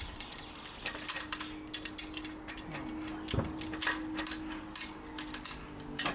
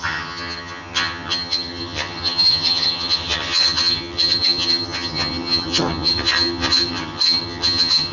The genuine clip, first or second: first